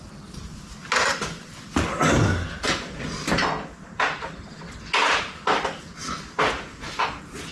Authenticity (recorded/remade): recorded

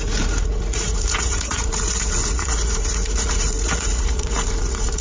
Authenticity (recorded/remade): remade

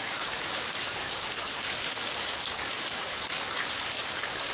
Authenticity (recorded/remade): remade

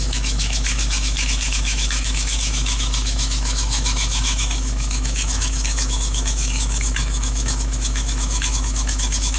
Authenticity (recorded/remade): remade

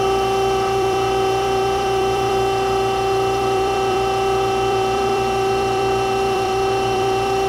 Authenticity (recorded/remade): remade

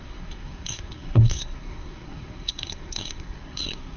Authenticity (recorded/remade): remade